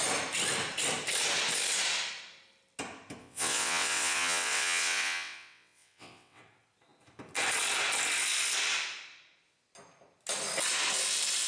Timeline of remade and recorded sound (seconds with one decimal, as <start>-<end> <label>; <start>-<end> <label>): 0.0-3.2 recorded; 3.2-6.4 remade; 6.4-11.5 recorded